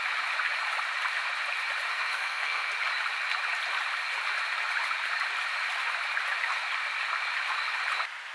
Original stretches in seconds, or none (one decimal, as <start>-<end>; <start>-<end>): 0.0-1.9; 2.7-8.3